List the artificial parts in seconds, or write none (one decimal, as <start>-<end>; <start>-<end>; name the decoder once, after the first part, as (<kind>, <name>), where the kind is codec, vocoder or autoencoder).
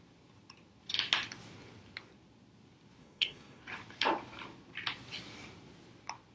3.0-3.6 (codec, SNAC)